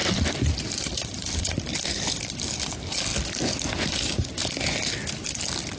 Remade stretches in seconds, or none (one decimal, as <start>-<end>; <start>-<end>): 0.0-2.1